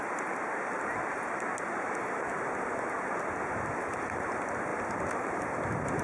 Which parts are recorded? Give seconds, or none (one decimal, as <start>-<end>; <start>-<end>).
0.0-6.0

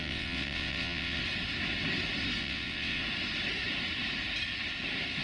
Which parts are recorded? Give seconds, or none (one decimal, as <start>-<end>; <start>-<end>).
1.2-2.4; 3.0-5.2

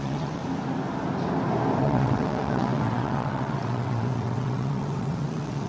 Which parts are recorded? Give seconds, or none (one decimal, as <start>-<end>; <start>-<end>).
0.4-1.8

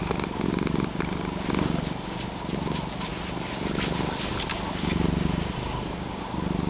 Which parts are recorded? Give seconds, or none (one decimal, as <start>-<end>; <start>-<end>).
0.0-6.7